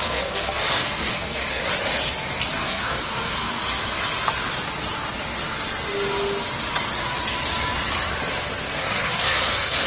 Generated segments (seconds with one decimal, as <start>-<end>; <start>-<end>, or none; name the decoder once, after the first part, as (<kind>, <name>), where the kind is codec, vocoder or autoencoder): 0.0-1.6 (codec, SNAC); 2.5-3.8; 8.8-9.9